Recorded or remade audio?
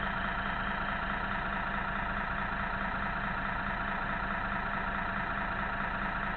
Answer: recorded